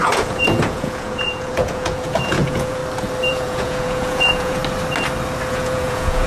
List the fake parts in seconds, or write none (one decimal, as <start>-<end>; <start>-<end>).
0.0-2.8; 3.3-4.6; 5.5-6.3